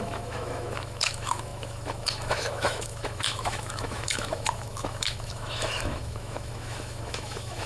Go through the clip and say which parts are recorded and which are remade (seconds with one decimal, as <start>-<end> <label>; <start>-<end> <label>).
0.0-7.7 remade